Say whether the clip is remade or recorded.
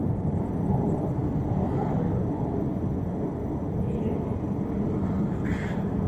recorded